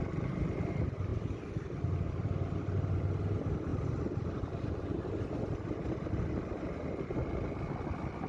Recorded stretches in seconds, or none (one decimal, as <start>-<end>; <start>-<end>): 0.0-8.3